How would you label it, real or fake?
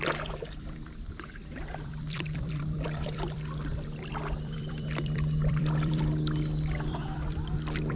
fake